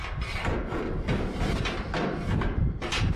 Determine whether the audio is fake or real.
real